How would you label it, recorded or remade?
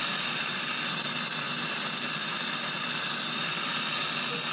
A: recorded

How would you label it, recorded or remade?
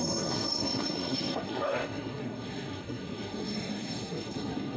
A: remade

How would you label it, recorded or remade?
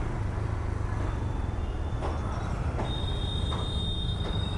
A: recorded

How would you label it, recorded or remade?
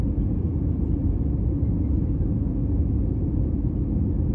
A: recorded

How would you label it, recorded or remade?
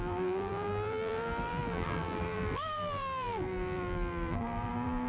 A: remade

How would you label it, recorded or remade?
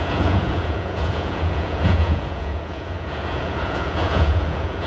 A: remade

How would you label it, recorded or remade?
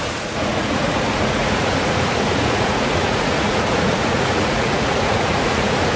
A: remade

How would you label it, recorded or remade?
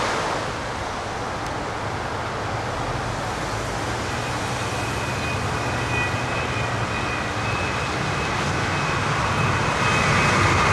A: recorded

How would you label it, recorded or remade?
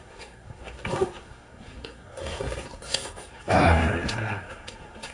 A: remade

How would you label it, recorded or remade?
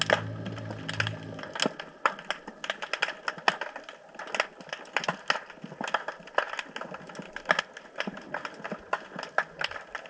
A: recorded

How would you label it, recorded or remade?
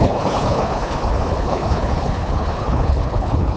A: remade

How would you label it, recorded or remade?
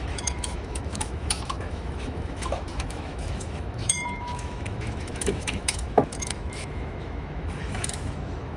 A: remade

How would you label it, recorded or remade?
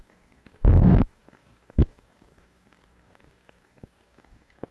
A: remade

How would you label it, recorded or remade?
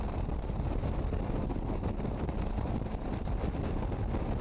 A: remade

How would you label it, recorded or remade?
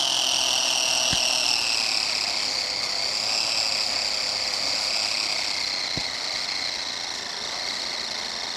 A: recorded